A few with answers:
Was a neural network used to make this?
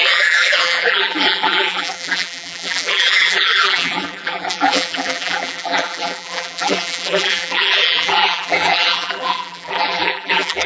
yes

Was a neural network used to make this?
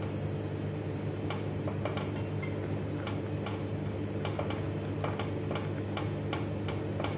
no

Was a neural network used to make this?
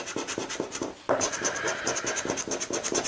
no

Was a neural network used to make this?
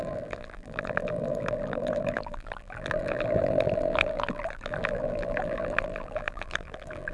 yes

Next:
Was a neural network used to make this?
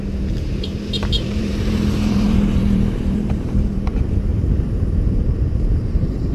yes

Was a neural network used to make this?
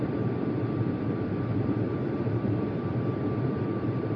yes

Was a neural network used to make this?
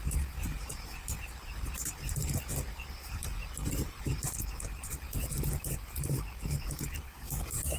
yes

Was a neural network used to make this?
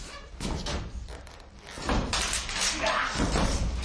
yes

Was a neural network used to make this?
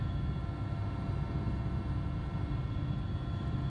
no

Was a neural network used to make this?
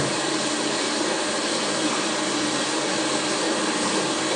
yes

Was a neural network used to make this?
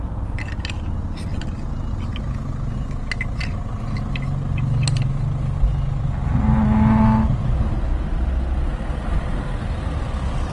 no